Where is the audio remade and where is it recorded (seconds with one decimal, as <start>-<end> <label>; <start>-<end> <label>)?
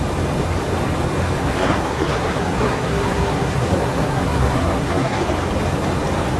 0.0-1.4 recorded; 1.4-5.2 remade; 5.2-6.4 recorded